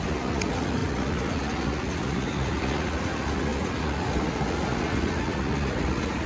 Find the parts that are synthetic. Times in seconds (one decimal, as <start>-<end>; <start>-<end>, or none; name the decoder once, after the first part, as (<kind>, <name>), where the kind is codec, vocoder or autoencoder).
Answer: 0.0-6.3 (vocoder, Vocos)